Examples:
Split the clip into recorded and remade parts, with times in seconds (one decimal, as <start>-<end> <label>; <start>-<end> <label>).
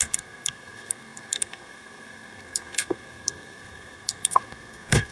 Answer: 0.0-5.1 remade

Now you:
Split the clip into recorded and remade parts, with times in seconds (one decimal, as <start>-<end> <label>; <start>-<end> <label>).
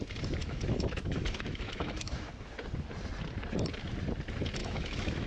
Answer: 0.0-0.4 recorded; 0.4-2.3 remade; 2.3-4.6 recorded; 4.6-5.3 remade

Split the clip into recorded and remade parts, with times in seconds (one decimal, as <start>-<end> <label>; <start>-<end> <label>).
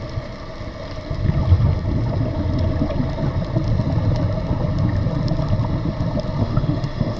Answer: 0.0-6.4 recorded; 6.4-7.2 remade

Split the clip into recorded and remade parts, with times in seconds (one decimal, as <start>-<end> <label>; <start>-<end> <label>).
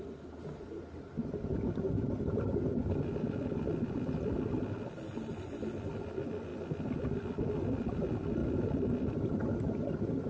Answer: 0.0-10.3 recorded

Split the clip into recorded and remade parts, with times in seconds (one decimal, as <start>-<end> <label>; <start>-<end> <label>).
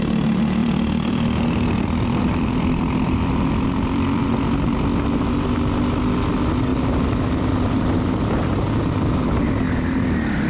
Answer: 0.0-0.6 recorded; 0.6-4.2 remade; 4.2-6.7 recorded; 6.7-9.4 remade; 9.4-10.5 recorded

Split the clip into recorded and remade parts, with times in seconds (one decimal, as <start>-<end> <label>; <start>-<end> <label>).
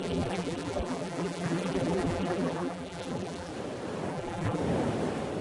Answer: 0.0-3.5 remade; 3.5-4.1 recorded; 4.1-4.6 remade; 4.6-5.4 recorded